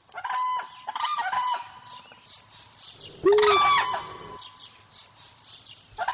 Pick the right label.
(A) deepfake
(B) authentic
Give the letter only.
B